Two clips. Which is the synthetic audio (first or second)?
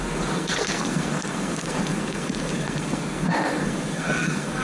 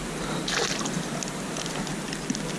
first